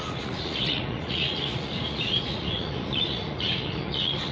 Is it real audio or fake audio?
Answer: fake